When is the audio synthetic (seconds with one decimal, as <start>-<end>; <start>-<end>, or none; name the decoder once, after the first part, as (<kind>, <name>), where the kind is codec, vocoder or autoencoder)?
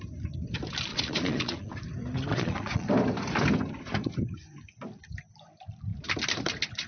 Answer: 0.9-1.7 (vocoder, Vocos); 2.3-2.9